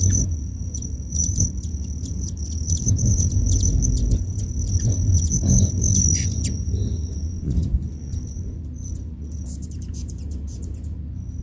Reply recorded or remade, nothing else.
remade